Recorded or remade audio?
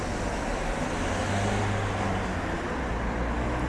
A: recorded